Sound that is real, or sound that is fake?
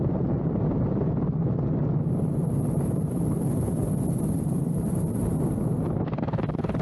real